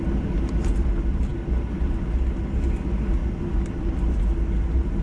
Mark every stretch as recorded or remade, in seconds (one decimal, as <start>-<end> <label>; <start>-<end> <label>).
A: 0.0-5.0 recorded